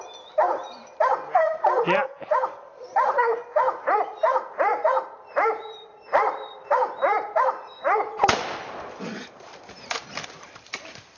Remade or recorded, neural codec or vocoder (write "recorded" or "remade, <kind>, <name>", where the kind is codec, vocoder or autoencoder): remade, vocoder, BigVGAN v2